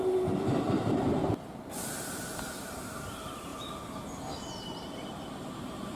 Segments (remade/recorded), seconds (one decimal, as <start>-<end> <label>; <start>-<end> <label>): 0.0-1.2 remade; 1.2-1.7 recorded; 1.7-6.0 remade